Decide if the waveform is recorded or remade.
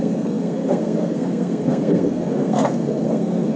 remade